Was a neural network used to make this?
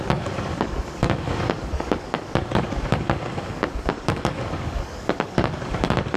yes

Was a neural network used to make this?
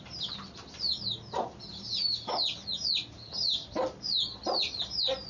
no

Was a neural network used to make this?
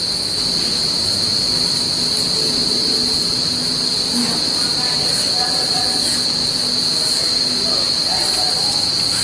no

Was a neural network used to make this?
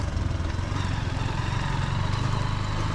no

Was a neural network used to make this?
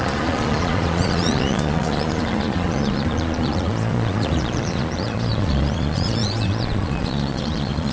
yes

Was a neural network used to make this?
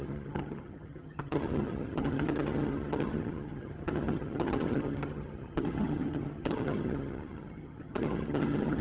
yes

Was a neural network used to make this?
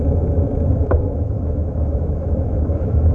yes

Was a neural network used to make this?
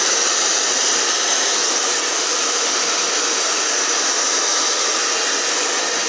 no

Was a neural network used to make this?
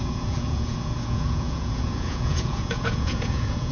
yes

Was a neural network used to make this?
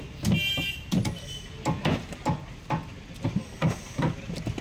no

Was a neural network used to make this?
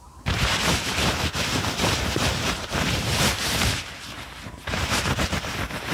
yes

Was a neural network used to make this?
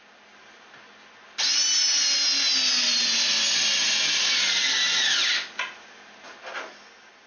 no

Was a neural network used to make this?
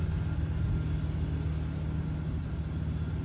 no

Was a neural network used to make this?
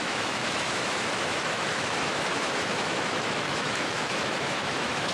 yes